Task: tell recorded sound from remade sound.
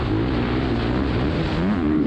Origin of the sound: recorded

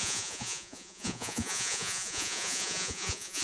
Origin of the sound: remade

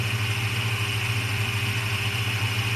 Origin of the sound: recorded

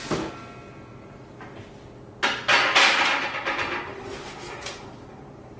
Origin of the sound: recorded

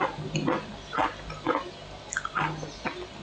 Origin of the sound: recorded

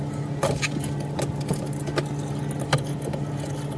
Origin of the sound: recorded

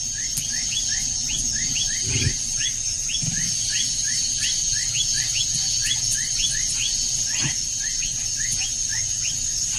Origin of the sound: recorded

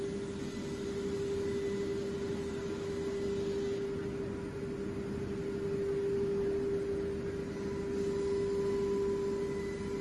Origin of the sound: recorded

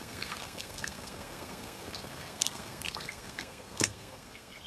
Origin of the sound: remade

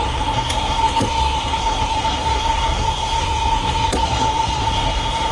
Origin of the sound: remade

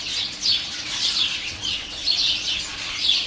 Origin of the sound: remade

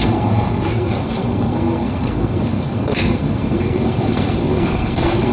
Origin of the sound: remade